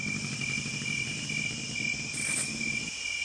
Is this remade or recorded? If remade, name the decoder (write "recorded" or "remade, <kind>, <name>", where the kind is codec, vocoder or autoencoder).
recorded